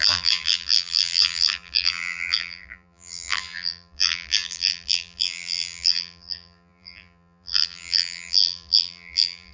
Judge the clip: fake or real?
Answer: fake